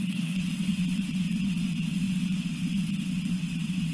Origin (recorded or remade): remade